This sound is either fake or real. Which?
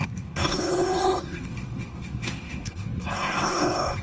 fake